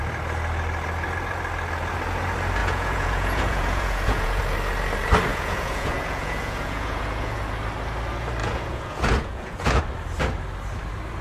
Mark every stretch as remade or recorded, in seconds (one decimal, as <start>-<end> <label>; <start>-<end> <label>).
0.0-2.6 recorded; 2.6-4.4 remade; 4.4-5.3 recorded; 5.3-7.4 remade; 7.4-8.4 recorded; 8.4-9.8 remade; 9.8-11.2 recorded